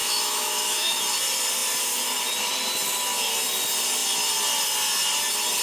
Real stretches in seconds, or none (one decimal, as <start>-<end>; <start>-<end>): 1.0-5.6